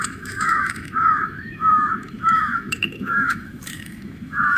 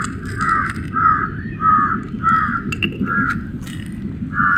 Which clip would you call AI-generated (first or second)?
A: first